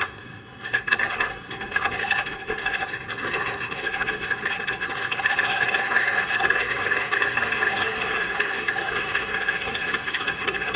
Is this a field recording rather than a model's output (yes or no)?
no